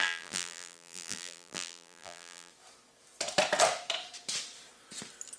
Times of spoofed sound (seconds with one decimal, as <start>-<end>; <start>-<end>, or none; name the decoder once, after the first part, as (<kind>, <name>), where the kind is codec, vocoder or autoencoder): 0.0-2.5 (vocoder, BigVGAN v2)